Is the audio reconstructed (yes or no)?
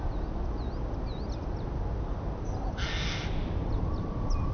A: no